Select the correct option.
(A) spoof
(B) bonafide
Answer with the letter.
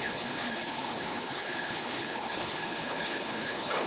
A